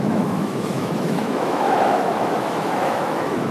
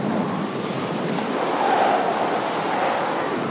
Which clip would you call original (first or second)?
second